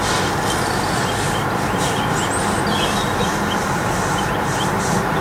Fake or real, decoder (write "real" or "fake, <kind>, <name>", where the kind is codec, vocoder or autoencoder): real